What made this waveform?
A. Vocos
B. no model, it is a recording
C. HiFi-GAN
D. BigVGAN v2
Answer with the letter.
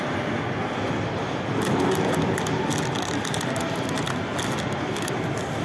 B